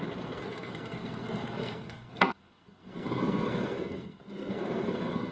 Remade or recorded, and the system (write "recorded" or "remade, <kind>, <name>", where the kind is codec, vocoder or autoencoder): remade, codec, SNAC